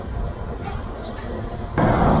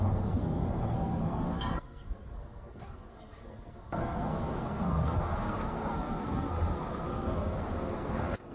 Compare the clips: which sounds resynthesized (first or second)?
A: second